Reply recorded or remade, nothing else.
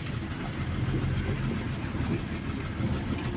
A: recorded